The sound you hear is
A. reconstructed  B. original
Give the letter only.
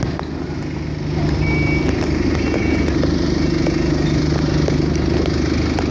B